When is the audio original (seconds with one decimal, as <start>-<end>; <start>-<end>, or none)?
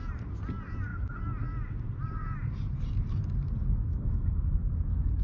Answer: 0.0-3.9; 4.4-5.2